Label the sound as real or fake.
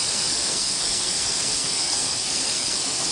fake